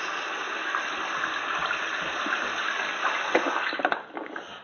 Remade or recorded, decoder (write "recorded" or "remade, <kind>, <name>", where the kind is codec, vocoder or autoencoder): recorded